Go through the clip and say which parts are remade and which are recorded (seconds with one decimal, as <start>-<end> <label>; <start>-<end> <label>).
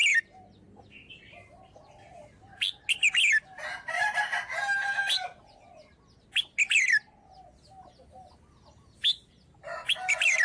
0.0-10.4 recorded